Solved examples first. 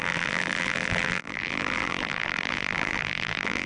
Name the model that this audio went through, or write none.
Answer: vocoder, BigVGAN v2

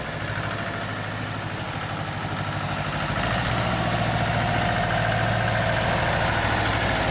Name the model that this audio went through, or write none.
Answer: none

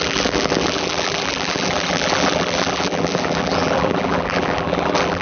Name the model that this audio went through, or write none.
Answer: vocoder, BigVGAN v2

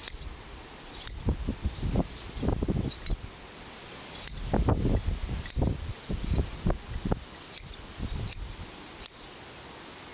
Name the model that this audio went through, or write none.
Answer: none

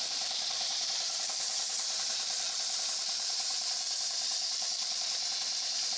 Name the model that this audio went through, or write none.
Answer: vocoder, BigVGAN v2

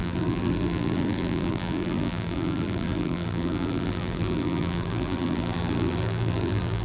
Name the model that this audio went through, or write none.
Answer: vocoder, BigVGAN v2